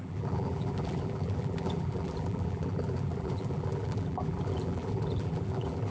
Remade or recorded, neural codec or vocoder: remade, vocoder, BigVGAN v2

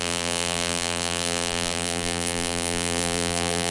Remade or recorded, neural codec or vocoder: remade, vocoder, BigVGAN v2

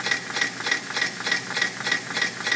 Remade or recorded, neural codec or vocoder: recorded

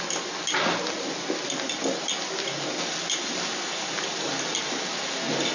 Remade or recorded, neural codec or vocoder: recorded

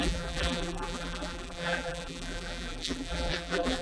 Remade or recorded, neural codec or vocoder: remade, vocoder, BigVGAN v2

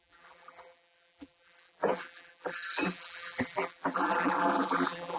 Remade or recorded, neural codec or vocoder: remade, vocoder, BigVGAN v2